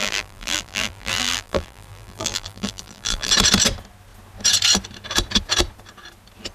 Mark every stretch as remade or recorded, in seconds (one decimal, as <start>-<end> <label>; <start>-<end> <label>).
0.0-3.3 remade; 3.3-6.5 recorded